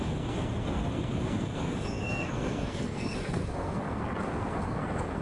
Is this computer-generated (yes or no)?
yes